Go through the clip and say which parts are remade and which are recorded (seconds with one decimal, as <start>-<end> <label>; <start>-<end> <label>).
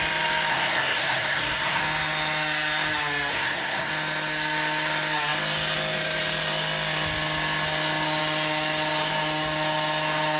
0.0-0.5 recorded; 0.5-1.8 remade; 1.8-3.3 recorded; 3.3-3.9 remade; 3.9-10.4 recorded